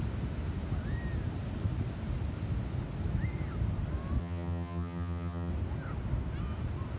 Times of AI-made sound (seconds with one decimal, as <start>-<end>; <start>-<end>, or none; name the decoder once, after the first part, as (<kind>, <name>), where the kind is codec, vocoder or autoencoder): 4.2-5.5 (vocoder, HiFi-GAN)